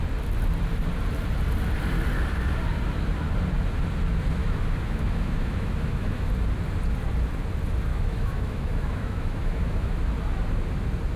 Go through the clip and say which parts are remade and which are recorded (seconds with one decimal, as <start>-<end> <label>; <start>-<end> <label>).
0.0-4.4 recorded; 4.4-6.3 remade; 6.3-7.9 recorded; 7.9-10.0 remade; 10.0-11.2 recorded